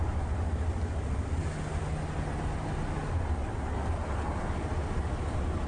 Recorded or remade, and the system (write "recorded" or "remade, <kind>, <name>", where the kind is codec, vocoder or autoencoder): recorded